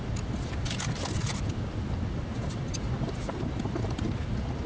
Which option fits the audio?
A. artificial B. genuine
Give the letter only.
B